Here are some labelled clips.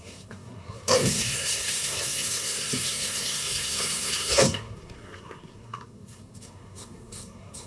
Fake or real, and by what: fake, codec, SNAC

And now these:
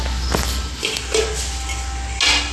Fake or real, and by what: real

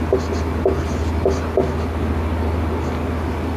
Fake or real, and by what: real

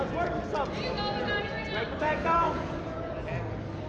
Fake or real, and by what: real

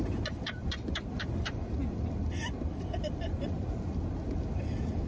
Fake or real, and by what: fake, vocoder, BigVGAN v2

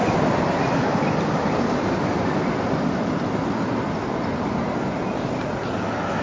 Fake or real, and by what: real